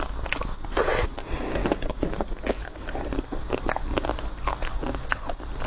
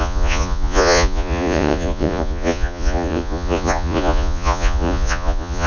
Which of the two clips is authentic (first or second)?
first